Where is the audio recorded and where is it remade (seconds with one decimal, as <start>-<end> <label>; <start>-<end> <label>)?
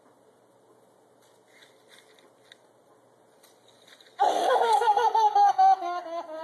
0.0-4.3 recorded; 4.3-6.0 remade; 6.0-6.4 recorded